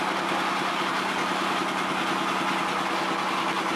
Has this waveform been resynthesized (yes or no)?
no